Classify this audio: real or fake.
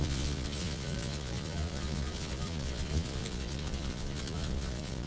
fake